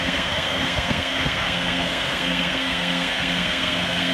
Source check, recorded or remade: remade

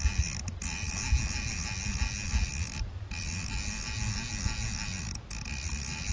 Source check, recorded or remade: recorded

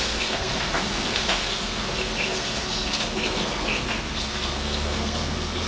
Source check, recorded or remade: remade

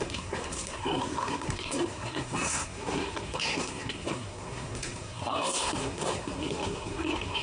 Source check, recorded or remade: remade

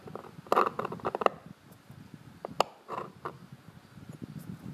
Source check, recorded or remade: recorded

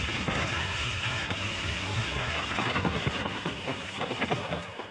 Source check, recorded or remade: remade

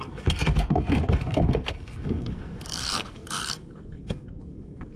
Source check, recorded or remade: remade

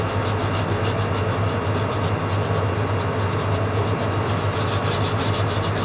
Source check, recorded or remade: recorded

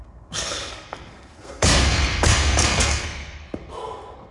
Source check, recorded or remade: remade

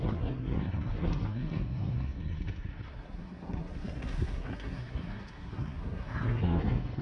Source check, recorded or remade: remade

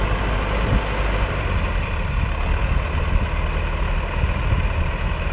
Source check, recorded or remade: recorded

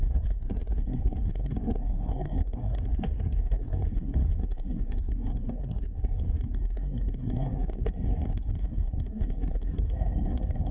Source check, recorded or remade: remade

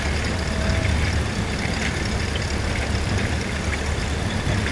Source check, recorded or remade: recorded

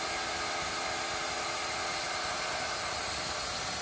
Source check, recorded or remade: recorded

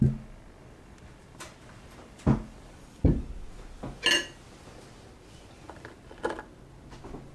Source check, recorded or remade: recorded